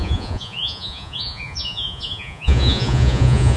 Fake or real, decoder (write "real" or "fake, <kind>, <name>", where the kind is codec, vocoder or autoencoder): fake, vocoder, Vocos